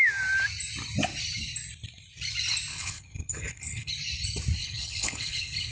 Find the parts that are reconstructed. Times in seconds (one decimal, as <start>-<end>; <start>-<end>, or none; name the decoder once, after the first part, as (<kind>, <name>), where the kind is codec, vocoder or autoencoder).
2.7-3.9 (codec, HILCodec); 4.6-5.7